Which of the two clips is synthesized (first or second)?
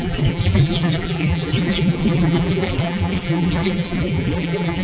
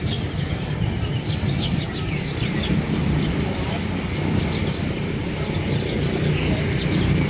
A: first